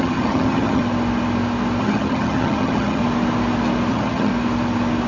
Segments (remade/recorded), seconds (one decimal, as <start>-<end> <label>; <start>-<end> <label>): 0.0-0.8 remade; 0.8-1.8 recorded; 1.8-3.0 remade; 3.0-3.9 recorded; 3.9-4.3 remade; 4.3-5.1 recorded